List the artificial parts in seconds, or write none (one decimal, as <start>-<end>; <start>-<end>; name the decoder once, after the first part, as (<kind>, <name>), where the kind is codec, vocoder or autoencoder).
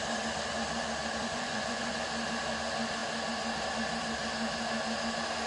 1.2-2.0 (vocoder, Vocos)